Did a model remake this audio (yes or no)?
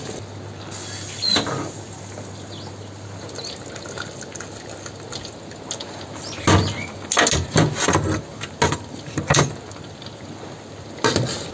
no